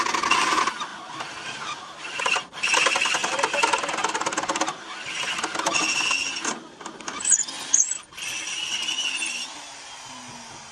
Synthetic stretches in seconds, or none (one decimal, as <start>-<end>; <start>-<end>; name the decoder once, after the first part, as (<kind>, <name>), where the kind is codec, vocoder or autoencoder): none